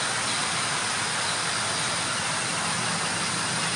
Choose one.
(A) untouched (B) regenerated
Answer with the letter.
A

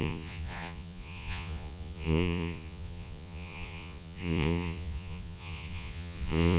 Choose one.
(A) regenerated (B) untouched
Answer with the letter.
A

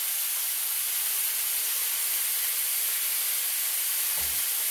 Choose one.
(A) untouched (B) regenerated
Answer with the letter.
A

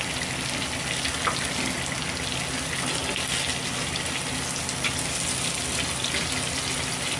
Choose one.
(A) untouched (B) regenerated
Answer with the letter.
A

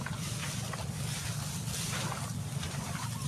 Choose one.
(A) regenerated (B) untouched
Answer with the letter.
B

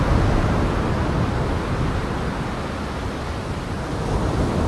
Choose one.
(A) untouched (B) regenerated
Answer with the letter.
A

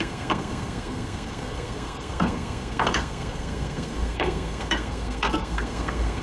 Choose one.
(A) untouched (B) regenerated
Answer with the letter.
B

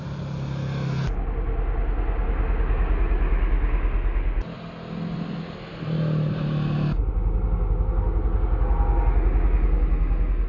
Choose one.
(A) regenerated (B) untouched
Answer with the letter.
B